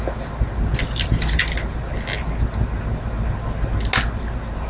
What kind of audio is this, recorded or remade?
recorded